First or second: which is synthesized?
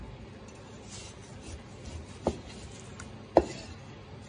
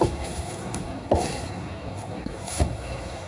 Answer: second